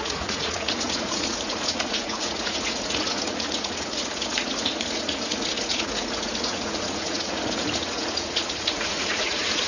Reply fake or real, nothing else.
fake